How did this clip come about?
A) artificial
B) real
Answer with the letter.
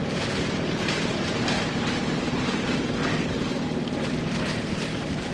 A